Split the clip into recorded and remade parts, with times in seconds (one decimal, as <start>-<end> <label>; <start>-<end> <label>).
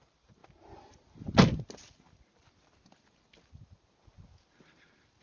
0.0-5.2 recorded